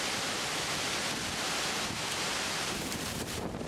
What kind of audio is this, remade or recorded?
recorded